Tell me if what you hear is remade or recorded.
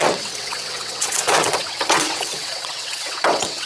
remade